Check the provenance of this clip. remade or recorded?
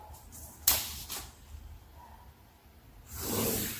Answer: recorded